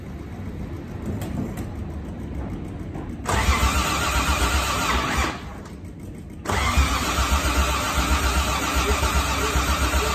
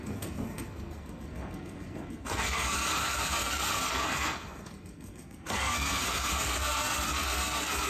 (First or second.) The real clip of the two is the first